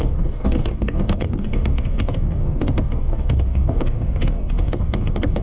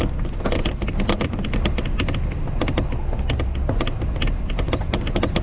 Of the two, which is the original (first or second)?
second